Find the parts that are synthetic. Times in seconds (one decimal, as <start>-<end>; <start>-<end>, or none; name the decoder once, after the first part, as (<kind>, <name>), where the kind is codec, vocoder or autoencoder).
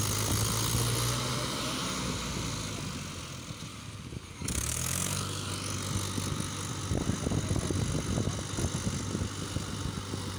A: 3.7-5.5 (codec, DAC)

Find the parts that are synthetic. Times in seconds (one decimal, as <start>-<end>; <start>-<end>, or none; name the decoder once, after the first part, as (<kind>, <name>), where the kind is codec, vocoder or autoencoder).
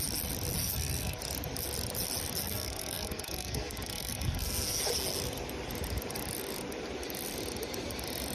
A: 0.6-1.2 (codec, SNAC); 2.4-4.8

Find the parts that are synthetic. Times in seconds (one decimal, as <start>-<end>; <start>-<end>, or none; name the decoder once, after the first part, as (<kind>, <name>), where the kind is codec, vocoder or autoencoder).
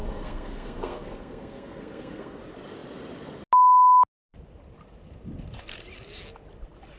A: 0.0-2.4 (codec, SNAC)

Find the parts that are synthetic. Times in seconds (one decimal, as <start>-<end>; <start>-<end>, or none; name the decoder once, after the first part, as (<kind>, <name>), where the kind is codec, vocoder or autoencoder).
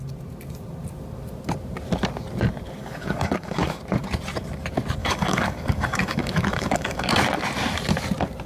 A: 2.8-3.8 (codec, DAC); 5.0-7.1